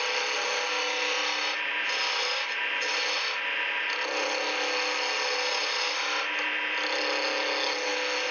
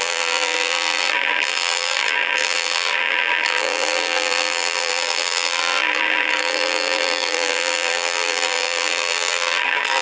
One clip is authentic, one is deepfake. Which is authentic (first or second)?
first